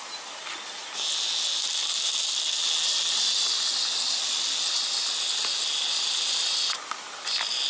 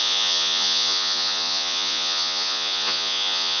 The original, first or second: first